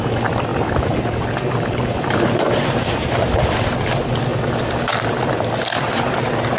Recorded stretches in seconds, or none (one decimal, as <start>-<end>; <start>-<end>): 4.3-5.4